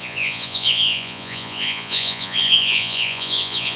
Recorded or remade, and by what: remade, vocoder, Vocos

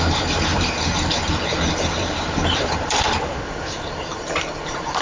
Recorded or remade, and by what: remade, vocoder, BigVGAN v2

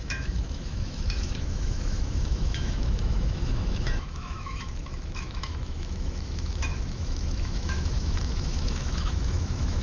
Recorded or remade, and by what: remade, autoencoder, DAC-VAE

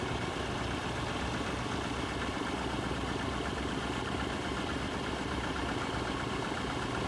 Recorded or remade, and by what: recorded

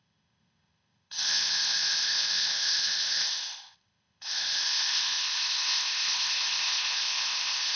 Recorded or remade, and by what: remade, codec, ZipCodec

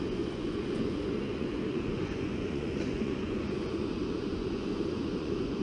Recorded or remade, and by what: remade, vocoder, Vocos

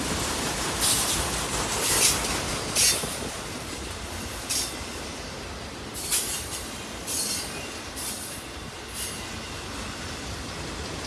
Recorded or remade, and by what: remade, vocoder, BigVGAN v2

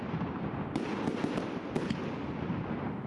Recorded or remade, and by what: recorded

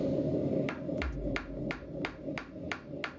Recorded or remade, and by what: recorded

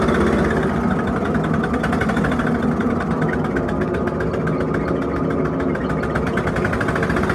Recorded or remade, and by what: recorded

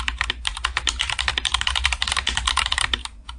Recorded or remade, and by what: remade, vocoder, BigVGAN v2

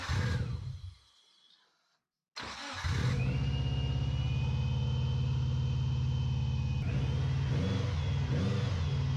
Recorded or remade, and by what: recorded